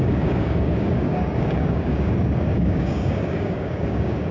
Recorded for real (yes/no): no